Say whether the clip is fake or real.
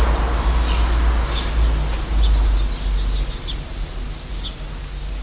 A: real